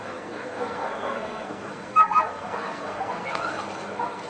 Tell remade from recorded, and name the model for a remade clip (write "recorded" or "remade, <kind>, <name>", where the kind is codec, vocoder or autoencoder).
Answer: remade, codec, SNAC